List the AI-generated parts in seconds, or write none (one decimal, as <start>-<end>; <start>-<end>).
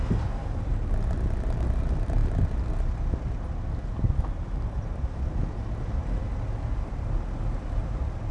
none